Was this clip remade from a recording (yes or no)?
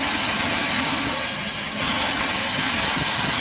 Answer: yes